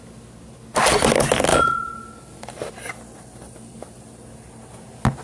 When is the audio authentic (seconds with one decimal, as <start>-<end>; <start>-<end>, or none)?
0.0-5.2